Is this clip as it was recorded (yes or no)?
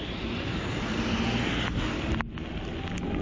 yes